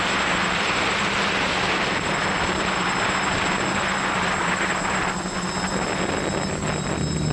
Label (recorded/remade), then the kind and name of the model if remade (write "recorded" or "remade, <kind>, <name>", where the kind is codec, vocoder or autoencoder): recorded